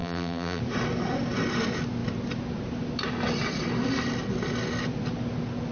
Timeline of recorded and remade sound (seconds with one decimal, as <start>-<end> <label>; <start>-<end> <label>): 0.0-0.6 remade; 0.6-5.7 recorded